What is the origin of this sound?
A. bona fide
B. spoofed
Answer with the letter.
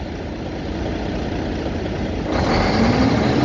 A